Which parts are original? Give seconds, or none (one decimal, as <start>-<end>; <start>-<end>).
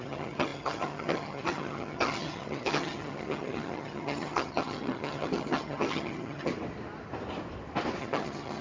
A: 6.5-8.0